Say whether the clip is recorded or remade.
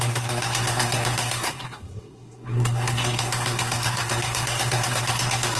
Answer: remade